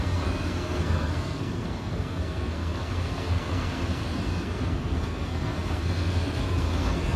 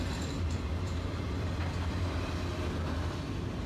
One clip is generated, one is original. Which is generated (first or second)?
first